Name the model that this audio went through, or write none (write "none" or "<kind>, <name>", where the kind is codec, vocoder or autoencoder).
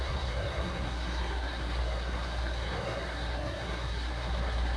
codec, SNAC